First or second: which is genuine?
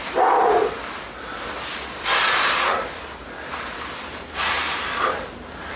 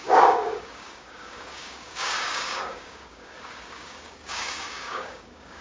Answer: first